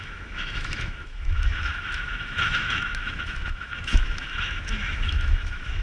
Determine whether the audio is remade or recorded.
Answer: remade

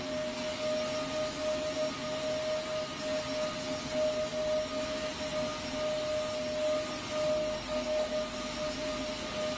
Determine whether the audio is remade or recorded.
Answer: recorded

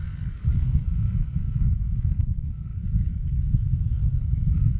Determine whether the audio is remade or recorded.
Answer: remade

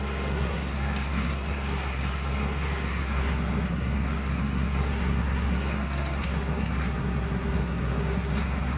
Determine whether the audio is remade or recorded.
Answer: remade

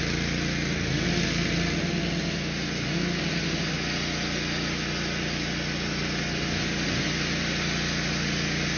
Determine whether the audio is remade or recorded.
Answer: recorded